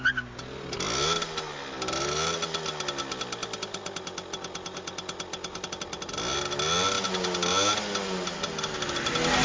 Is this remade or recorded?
recorded